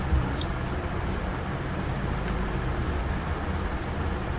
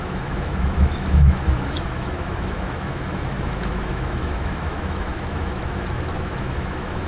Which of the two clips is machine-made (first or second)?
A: second